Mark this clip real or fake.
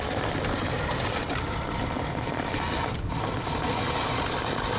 real